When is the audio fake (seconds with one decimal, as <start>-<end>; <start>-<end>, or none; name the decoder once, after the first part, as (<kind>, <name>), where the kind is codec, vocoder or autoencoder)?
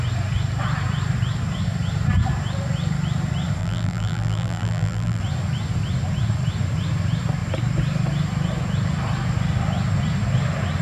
3.6-5.2 (vocoder, BigVGAN v2)